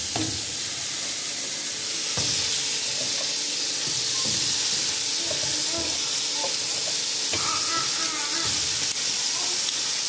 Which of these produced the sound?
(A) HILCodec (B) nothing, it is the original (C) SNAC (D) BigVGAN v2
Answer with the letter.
B